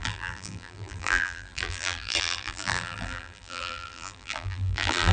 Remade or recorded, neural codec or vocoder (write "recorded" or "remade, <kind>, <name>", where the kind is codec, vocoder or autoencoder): remade, vocoder, BigVGAN v2